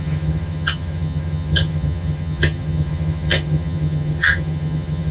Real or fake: fake